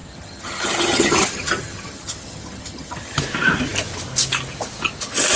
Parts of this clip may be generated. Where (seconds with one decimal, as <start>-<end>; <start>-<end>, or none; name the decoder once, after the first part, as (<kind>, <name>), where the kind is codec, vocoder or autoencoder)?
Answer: 0.0-3.2 (vocoder, HiFi-GAN)